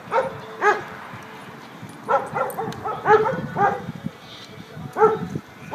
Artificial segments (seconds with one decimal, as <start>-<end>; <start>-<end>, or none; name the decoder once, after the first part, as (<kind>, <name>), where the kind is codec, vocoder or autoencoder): none